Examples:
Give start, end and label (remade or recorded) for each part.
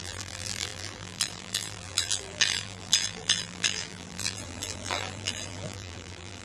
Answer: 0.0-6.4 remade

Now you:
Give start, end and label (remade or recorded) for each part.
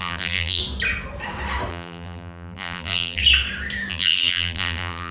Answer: 0.0-0.6 remade; 0.6-1.7 recorded; 1.7-3.2 remade; 3.2-3.9 recorded; 3.9-5.1 remade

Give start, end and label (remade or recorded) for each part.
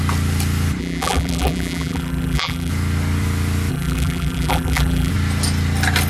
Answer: 0.0-0.8 recorded; 0.8-2.7 remade; 2.7-3.7 recorded; 3.7-5.1 remade; 5.1-6.1 recorded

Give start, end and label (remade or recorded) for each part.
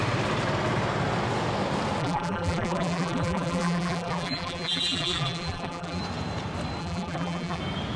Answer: 0.0-2.0 recorded; 2.0-6.0 remade; 6.0-6.8 recorded; 6.8-7.6 remade; 7.6-8.0 recorded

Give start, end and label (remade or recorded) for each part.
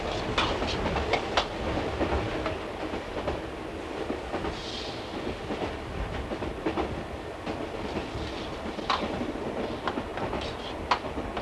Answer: 0.0-11.4 recorded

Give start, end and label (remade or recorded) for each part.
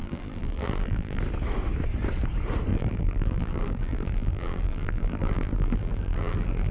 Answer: 0.0-1.2 remade; 1.2-2.7 recorded; 2.7-6.7 remade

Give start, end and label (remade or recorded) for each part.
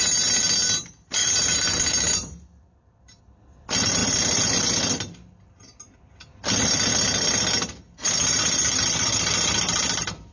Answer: 0.0-1.2 recorded; 1.2-3.2 remade; 3.2-10.3 recorded